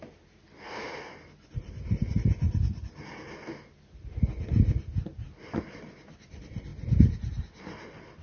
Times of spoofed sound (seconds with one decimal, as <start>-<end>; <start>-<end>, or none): none